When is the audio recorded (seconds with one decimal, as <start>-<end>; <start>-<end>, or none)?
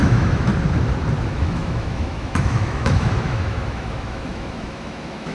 0.5-1.2